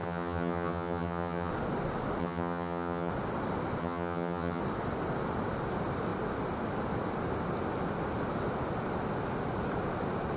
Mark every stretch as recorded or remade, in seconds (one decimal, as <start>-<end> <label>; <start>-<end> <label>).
0.0-1.5 remade; 1.5-2.2 recorded; 2.2-3.1 remade; 3.1-3.8 recorded; 3.8-4.6 remade; 4.6-10.4 recorded